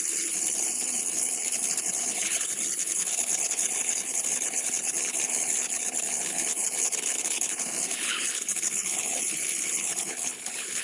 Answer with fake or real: fake